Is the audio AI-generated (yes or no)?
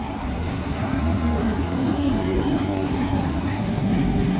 yes